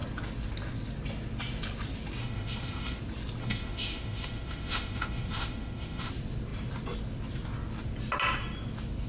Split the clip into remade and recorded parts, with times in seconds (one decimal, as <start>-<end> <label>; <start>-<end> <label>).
0.0-2.2 recorded; 2.2-3.0 remade; 3.0-3.4 recorded; 3.4-6.1 remade; 6.1-9.1 recorded